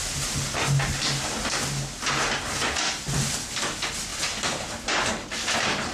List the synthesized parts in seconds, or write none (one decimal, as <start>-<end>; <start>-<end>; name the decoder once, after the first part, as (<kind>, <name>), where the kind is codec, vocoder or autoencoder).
none

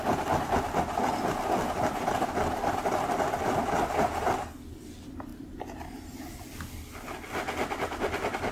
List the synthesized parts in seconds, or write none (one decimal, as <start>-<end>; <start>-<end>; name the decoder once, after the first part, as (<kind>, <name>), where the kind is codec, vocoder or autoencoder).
5.3-6.4 (vocoder, BigVGAN v2)

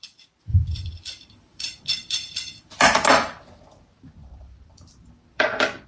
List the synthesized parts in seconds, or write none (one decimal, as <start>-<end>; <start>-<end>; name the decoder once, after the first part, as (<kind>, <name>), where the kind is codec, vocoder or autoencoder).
0.5-3.1 (vocoder, BigVGAN v2); 4.2-5.9

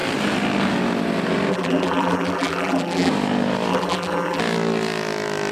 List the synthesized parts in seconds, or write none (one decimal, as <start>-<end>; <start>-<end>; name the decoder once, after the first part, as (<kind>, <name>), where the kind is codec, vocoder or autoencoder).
1.5-3.1 (vocoder, BigVGAN v2); 3.7-4.4